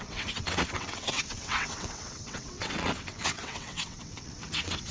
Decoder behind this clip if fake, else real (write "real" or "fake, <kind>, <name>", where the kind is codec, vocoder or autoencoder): fake, vocoder, WaveNeXt